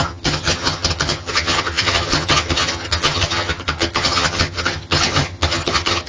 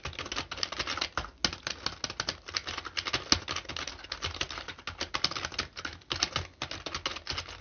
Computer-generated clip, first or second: first